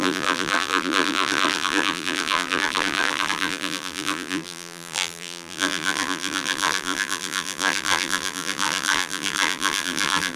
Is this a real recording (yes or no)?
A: no